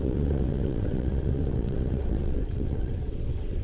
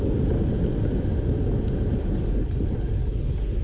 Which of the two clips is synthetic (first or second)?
first